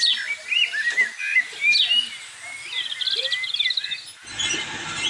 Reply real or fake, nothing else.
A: real